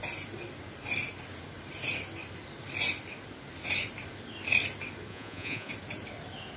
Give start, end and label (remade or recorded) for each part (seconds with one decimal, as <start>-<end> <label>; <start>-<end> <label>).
0.0-5.1 recorded; 5.1-5.7 remade; 5.7-6.6 recorded